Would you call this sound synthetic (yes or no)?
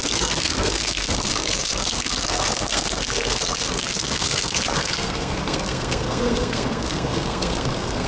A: yes